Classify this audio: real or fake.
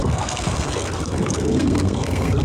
fake